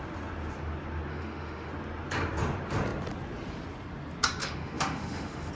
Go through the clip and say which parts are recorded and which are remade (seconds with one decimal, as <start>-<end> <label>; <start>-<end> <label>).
0.0-1.1 recorded; 1.1-1.7 remade; 1.7-4.4 recorded; 4.4-5.5 remade